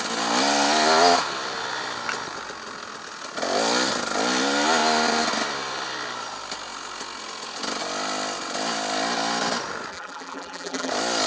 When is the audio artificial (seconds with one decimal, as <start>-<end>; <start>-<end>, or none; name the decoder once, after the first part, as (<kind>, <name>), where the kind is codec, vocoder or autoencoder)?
9.9-10.9 (vocoder, BigVGAN v2)